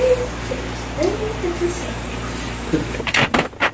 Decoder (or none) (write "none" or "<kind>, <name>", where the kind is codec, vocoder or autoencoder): none